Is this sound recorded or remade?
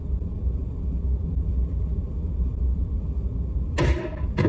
recorded